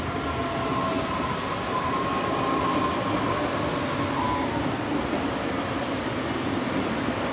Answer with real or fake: real